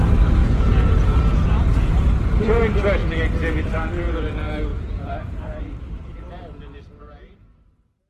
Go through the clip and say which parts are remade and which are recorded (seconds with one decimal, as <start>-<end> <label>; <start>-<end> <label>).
0.0-0.4 recorded; 0.4-2.4 remade; 2.4-4.7 recorded; 4.7-5.6 remade; 5.6-8.1 recorded